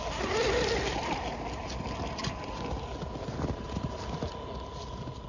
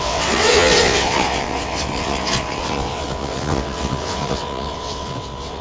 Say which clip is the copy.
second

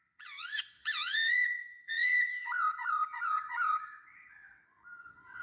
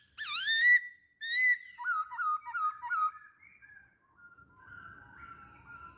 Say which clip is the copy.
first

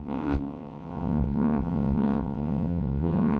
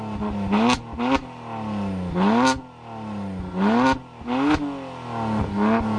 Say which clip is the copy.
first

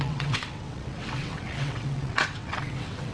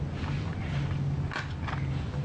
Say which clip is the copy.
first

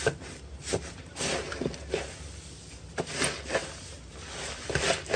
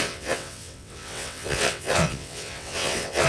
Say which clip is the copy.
second